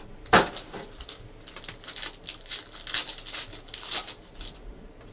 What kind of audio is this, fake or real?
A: real